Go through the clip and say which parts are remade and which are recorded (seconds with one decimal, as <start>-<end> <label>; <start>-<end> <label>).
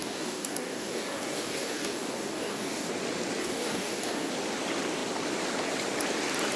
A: 0.0-2.9 remade; 2.9-3.4 recorded; 3.4-4.3 remade; 4.3-6.6 recorded